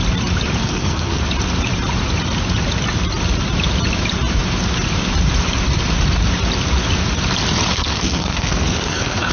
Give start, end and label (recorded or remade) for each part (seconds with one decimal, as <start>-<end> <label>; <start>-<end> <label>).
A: 0.0-0.6 recorded; 0.6-1.2 remade; 1.2-7.7 recorded; 7.7-9.3 remade